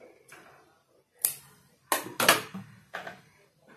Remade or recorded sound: recorded